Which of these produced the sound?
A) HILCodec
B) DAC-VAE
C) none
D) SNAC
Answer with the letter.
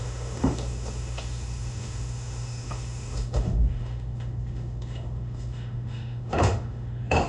B